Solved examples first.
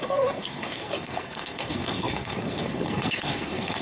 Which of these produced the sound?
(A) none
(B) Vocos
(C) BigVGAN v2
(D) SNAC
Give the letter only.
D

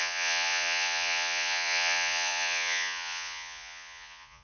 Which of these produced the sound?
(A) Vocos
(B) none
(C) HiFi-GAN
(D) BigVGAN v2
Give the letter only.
A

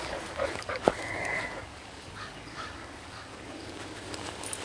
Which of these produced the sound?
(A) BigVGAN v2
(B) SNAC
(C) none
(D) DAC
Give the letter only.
D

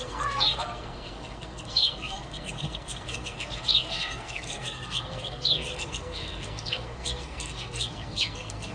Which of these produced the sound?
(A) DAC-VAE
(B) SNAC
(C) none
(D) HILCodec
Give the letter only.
B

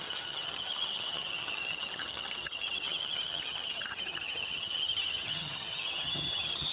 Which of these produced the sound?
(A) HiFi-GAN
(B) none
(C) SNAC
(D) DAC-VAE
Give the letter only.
A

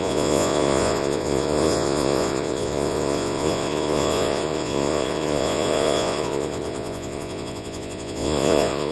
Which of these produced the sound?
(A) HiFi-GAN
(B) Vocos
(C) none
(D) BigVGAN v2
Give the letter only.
B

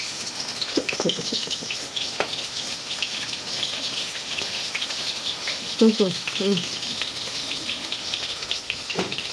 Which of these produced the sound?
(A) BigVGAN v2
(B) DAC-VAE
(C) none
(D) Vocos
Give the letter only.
B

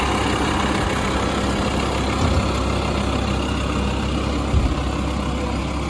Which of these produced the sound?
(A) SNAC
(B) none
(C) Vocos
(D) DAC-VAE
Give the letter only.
B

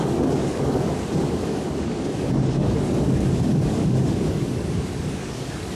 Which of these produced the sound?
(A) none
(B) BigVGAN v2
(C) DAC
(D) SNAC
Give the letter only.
C